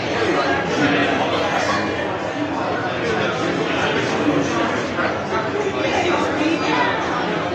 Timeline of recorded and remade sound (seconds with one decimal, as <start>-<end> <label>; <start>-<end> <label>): 0.0-7.5 recorded